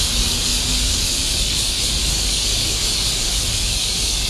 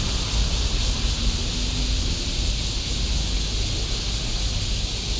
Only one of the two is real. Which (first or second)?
second